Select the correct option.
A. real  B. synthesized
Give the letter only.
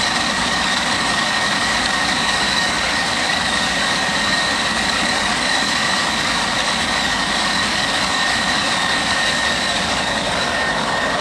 B